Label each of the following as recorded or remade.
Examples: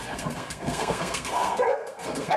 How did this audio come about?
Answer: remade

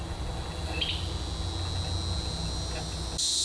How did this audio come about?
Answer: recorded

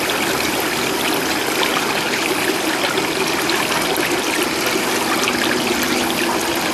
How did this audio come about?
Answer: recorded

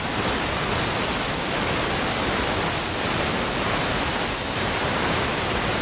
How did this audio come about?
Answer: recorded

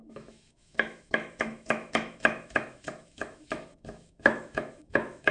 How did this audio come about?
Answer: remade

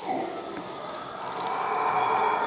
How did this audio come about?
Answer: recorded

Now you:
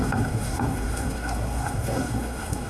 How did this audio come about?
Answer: remade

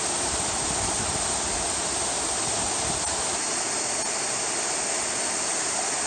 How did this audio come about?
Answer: recorded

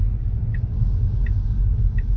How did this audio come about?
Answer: recorded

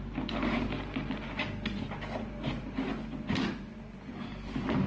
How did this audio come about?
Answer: recorded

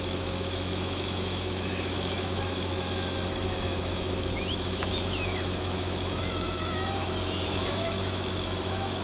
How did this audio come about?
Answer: remade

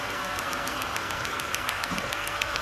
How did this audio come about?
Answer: remade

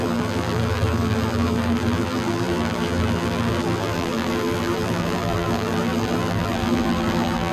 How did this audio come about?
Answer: remade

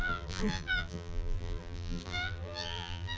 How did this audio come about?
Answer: remade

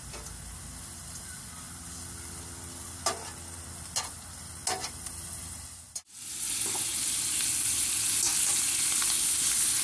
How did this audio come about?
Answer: recorded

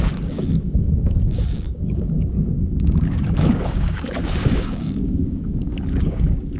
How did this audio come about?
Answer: remade